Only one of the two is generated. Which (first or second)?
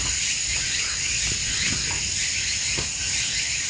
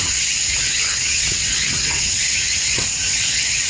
second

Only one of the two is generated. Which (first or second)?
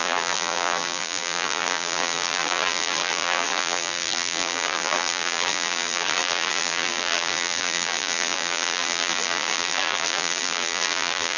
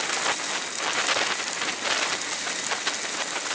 first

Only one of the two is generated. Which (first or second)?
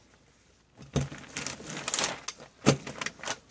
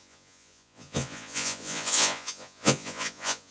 second